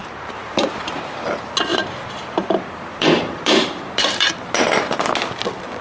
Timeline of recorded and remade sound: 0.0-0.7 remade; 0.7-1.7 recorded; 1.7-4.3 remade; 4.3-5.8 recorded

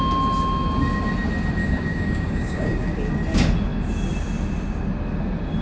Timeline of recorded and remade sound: 0.0-1.6 recorded; 1.6-3.1 remade; 3.1-5.6 recorded

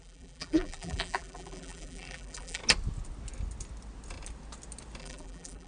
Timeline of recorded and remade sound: 0.0-2.6 remade; 2.6-5.0 recorded; 5.0-5.7 remade

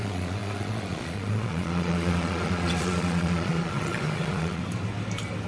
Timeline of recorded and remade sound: 0.0-4.6 remade; 4.6-5.5 recorded

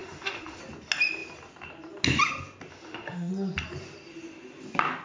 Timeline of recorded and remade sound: 0.0-0.6 remade; 0.6-2.7 recorded; 2.7-3.3 remade; 3.3-5.0 recorded

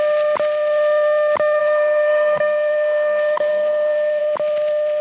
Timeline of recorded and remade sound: 0.0-1.6 recorded; 1.6-4.2 remade; 4.2-5.0 recorded

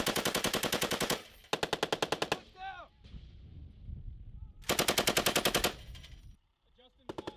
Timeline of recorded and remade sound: 0.0-1.4 remade; 1.4-2.8 recorded; 2.8-3.6 remade; 3.6-6.4 recorded; 6.4-7.4 remade

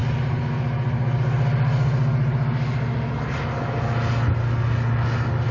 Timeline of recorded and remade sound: 0.0-5.5 recorded